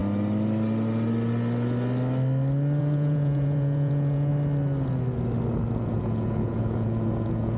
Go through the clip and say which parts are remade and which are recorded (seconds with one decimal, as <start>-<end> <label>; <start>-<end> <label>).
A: 0.0-2.8 recorded; 2.8-4.3 remade; 4.3-5.8 recorded; 5.8-7.6 remade